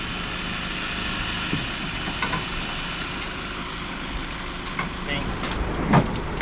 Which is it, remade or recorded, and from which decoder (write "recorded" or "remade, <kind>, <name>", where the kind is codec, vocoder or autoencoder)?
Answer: recorded